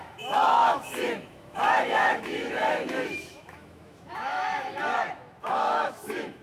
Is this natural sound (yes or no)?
no